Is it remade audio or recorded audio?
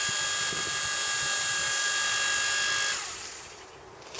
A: recorded